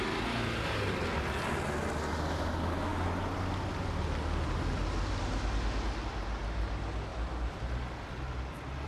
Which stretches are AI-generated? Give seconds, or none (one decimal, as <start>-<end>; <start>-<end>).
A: 7.1-8.9